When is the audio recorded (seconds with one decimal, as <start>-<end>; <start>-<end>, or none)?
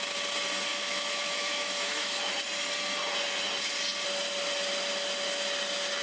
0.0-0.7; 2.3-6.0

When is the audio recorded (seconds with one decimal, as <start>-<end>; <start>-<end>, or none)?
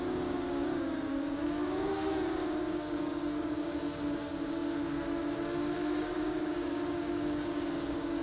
none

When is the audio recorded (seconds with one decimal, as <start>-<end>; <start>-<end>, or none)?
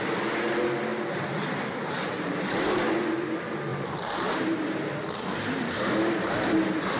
0.0-0.9; 2.8-3.7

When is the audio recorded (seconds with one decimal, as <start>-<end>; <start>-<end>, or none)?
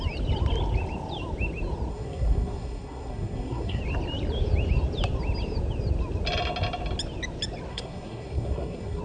0.0-1.9; 3.8-7.7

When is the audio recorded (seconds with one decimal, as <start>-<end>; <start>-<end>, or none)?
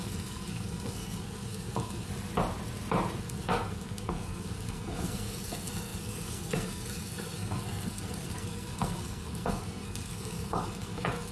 2.1-3.2